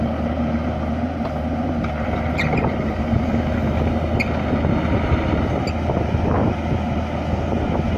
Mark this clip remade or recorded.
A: recorded